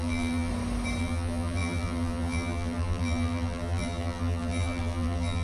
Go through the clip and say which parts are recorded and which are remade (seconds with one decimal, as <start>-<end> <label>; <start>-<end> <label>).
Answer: 0.0-0.5 remade; 0.5-1.0 recorded; 1.0-5.4 remade